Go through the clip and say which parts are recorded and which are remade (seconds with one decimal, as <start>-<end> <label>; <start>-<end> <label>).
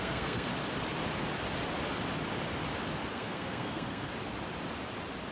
0.0-0.5 remade; 0.5-3.1 recorded; 3.1-4.1 remade; 4.1-5.3 recorded